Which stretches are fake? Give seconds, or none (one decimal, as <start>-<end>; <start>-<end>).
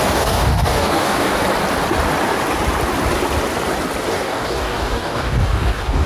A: 0.0-1.4; 4.1-6.1